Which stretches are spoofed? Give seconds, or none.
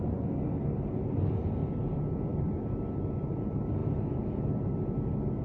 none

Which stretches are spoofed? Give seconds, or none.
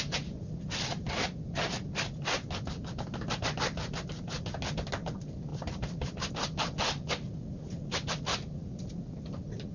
5.5-6.3 (vocoder, BigVGAN v2)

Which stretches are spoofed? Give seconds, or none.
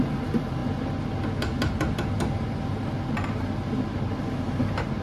none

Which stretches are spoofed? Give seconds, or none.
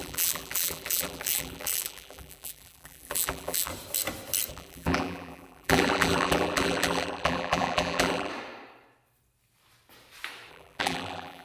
0.0-3.7 (vocoder, BigVGAN v2); 4.5-8.3; 10.5-11.4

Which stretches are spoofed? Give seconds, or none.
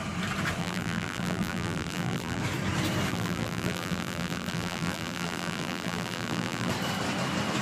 0.6-2.4 (vocoder, BigVGAN v2); 3.1-6.7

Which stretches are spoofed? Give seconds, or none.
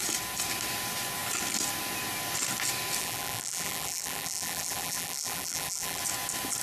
3.0-6.0 (vocoder, BigVGAN v2)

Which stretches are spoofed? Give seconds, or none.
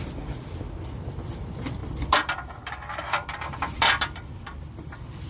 1.8-5.3 (vocoder, BigVGAN v2)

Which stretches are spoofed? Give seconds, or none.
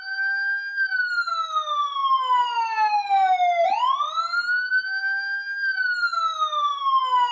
none